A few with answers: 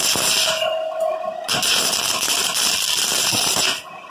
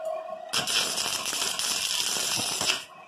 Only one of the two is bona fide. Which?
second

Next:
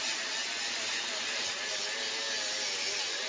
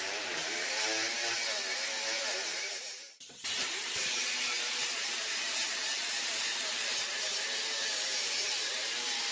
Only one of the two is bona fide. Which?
first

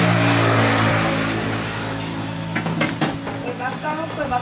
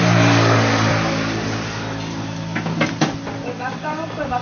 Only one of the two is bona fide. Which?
first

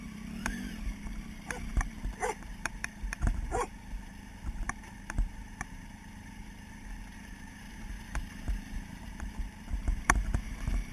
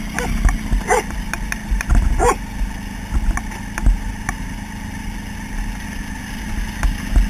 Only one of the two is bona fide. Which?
second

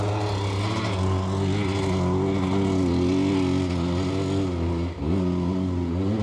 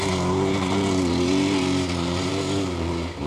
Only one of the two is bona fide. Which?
first